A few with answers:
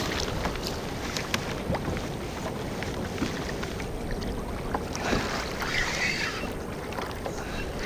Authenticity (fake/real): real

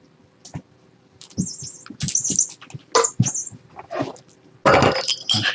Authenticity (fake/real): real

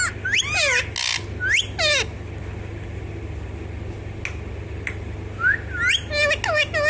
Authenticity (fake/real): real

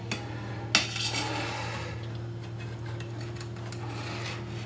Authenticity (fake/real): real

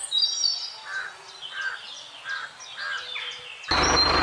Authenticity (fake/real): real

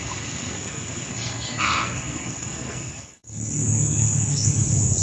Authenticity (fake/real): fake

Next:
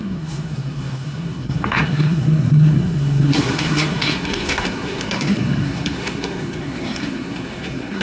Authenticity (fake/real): fake